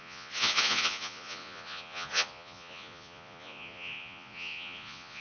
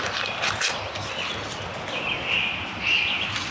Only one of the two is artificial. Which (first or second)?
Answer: first